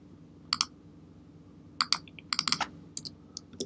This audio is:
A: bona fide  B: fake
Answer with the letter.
A